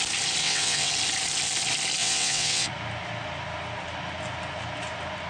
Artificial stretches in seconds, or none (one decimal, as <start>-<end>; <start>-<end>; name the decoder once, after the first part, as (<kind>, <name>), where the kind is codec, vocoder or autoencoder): 0.4-0.9 (vocoder, WaveNeXt); 2.0-2.7